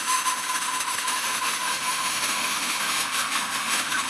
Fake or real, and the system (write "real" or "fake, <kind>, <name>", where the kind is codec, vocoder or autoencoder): fake, autoencoder, DAC-VAE